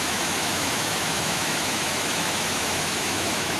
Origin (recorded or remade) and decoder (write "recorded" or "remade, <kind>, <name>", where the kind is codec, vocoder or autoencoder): remade, autoencoder, DAC-VAE